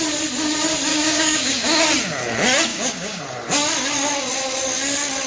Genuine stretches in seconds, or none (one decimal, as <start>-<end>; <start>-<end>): 0.0-0.9; 1.8-2.7; 3.2-5.3